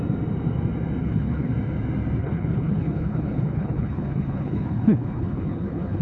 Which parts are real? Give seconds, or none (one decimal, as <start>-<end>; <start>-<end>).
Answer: 0.0-1.0; 1.5-2.2